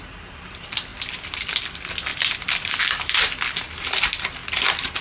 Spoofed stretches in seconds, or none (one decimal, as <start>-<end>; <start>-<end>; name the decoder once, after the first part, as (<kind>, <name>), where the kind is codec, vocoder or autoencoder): 0.9-1.6 (vocoder, BigVGAN v2); 2.1-2.7

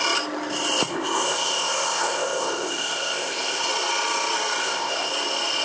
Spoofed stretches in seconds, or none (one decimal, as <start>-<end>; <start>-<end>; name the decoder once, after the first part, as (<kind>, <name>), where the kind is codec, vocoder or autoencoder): 0.9-3.6 (codec, ZipCodec); 4.6-5.1

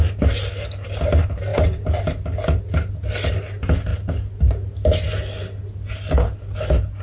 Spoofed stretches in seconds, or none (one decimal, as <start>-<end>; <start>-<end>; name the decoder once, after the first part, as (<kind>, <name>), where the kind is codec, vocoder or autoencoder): none